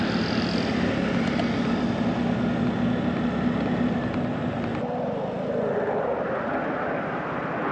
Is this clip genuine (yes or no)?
yes